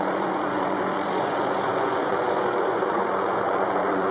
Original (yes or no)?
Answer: no